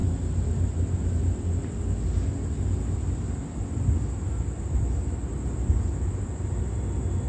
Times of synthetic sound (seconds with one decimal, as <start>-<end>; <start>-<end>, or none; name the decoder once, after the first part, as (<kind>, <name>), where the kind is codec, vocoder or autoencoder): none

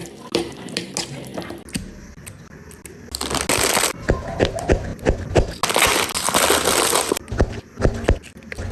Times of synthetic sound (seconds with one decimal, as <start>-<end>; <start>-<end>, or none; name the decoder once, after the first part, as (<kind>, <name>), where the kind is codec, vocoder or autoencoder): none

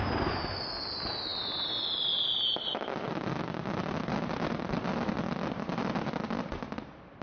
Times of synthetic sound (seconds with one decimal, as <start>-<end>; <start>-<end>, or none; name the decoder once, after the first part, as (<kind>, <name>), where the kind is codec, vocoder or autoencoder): none

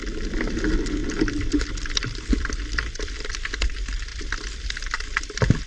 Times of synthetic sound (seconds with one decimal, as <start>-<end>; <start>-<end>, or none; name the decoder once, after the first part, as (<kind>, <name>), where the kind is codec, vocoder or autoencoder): 4.1-4.7 (vocoder, BigVGAN v2)

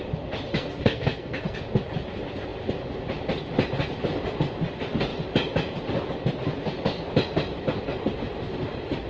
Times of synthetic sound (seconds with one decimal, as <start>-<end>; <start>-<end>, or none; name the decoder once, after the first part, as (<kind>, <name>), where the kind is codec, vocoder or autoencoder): 0.5-1.6 (codec, SNAC)